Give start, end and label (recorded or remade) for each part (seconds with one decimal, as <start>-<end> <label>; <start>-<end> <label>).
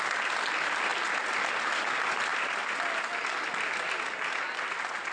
0.0-2.3 recorded; 2.3-2.8 remade; 2.8-5.1 recorded